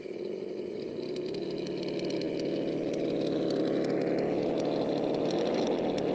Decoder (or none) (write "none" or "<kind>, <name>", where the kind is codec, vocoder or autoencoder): none